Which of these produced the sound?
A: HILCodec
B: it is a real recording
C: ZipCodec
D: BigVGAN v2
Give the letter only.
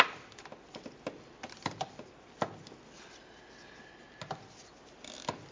B